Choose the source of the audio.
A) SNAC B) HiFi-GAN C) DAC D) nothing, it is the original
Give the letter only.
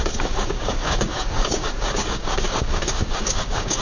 C